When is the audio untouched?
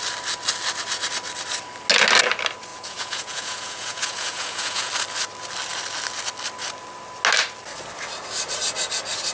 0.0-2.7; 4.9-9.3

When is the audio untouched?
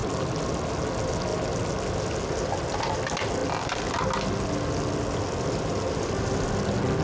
0.0-7.0